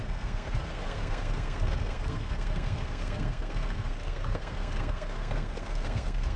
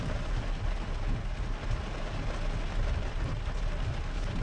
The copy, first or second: first